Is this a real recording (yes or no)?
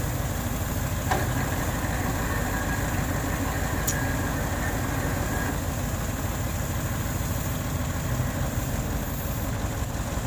yes